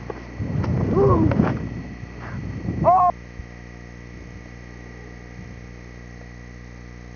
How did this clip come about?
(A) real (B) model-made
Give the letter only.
A